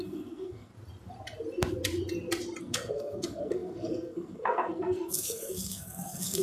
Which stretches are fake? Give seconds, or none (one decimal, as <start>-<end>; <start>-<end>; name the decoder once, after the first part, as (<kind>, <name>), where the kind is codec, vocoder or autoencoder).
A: 0.0-0.7 (codec, SNAC); 2.6-6.4